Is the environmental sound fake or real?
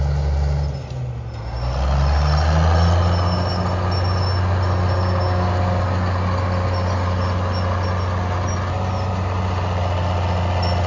real